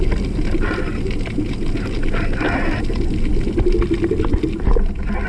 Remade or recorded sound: recorded